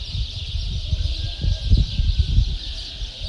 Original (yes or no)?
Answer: yes